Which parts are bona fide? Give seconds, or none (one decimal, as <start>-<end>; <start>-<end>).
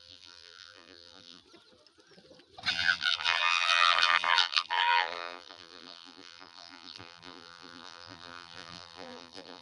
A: 1.4-2.7